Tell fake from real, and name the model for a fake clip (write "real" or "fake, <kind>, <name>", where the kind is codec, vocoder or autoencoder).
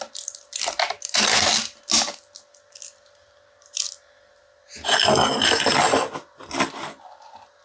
real